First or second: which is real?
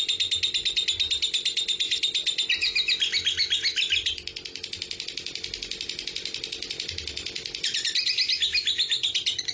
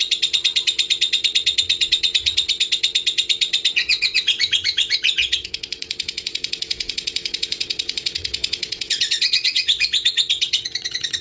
first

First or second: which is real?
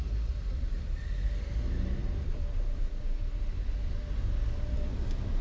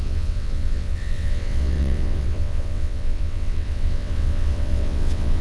first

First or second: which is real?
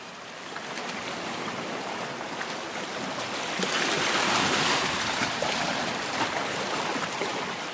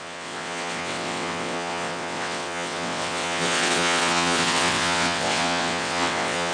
first